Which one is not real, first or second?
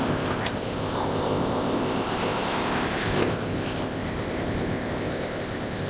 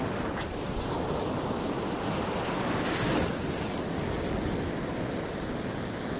first